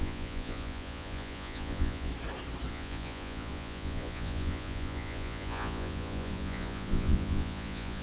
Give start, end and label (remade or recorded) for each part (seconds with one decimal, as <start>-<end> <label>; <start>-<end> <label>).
0.0-2.1 remade; 2.1-2.7 recorded; 2.7-8.0 remade